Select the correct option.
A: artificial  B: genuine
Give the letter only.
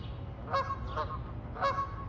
B